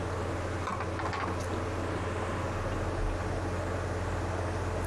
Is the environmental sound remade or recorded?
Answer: recorded